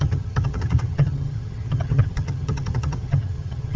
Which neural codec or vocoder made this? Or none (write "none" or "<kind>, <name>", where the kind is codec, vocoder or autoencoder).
vocoder, HiFi-GAN